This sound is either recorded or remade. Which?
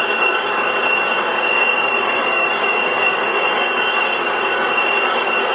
remade